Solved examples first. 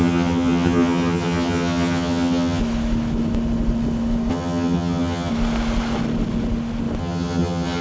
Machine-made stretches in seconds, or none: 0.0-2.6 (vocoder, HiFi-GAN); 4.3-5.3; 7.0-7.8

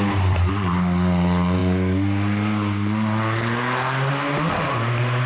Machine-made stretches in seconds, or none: none

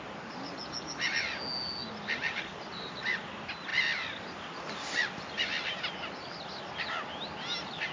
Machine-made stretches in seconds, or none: none

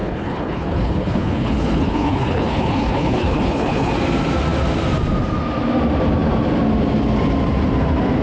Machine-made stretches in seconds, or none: 0.0-3.9 (codec, HILCodec)

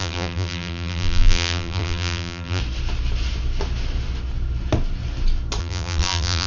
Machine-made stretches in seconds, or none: 0.0-2.6 (vocoder, BigVGAN v2); 5.6-6.5